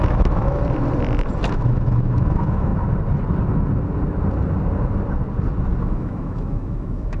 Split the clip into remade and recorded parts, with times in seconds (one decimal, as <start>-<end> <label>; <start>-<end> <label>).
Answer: 0.0-0.6 remade; 0.6-1.5 recorded; 1.5-2.7 remade; 2.7-5.8 recorded; 5.8-7.2 remade